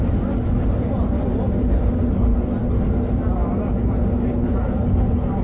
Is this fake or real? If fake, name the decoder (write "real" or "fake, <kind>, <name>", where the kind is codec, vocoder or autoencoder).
real